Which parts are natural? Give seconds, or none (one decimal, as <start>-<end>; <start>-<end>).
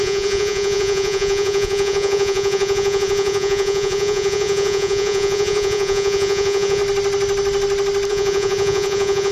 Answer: 6.8-8.1